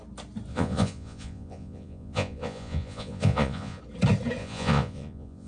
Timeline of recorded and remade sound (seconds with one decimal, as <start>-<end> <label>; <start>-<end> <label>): 0.0-0.5 recorded; 0.5-3.8 remade; 3.8-4.4 recorded; 4.4-5.5 remade